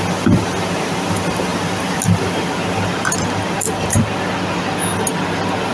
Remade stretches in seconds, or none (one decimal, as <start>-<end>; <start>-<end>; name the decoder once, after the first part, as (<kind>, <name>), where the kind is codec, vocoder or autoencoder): none